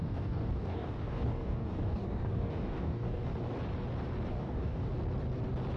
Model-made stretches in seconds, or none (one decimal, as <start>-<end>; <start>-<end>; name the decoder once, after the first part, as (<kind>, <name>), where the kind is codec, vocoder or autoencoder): 0.0-3.3 (codec, DAC); 4.3-4.9